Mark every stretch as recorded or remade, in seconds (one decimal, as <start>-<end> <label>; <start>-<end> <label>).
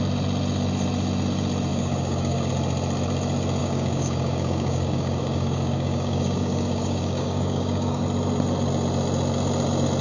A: 0.0-1.7 recorded; 1.7-2.5 remade; 2.5-3.6 recorded; 3.6-8.0 remade; 8.0-10.0 recorded